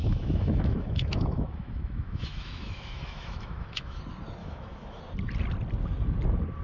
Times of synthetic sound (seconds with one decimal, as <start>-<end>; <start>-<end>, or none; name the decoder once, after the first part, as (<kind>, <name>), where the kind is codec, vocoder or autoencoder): 0.0-4.0 (autoencoder, DAC-VAE); 4.4-5.0